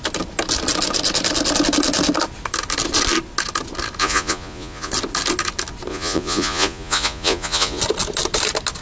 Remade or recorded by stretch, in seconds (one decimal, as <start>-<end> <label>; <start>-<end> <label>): 0.0-4.0 recorded; 4.0-4.9 remade; 4.9-5.9 recorded; 5.9-7.8 remade; 7.8-8.8 recorded